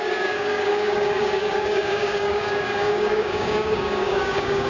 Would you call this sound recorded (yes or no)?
no